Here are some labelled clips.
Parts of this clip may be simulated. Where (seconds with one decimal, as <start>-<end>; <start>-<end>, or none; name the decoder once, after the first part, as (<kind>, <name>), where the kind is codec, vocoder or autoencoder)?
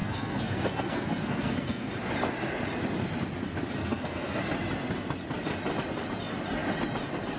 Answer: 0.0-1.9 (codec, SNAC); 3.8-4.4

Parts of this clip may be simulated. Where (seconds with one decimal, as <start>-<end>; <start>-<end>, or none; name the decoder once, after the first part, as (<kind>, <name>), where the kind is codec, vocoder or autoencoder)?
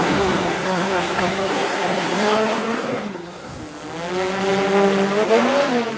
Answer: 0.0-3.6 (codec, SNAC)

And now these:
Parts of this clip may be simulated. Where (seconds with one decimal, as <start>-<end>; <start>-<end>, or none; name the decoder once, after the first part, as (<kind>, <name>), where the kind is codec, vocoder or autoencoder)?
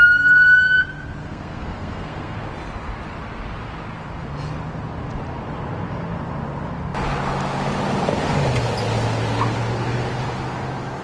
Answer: 1.2-2.4 (codec, SNAC)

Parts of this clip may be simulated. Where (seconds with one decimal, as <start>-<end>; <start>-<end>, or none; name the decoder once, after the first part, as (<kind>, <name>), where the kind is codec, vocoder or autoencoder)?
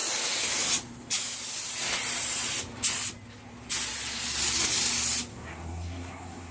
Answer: 5.3-6.5 (codec, SNAC)